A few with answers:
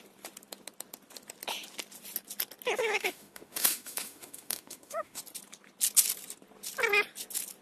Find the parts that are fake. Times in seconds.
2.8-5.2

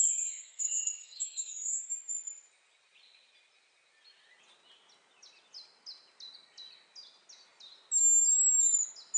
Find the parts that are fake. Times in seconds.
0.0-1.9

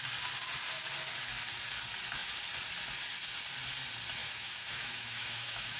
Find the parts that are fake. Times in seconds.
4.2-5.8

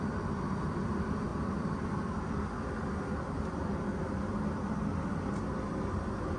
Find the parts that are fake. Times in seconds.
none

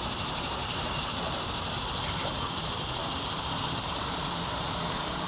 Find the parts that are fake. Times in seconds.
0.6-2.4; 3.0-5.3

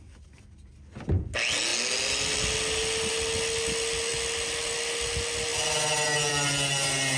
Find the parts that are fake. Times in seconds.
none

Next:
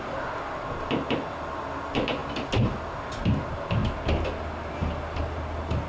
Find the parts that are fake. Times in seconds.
none